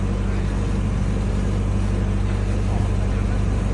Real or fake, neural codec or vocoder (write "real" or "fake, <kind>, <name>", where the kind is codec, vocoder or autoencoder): real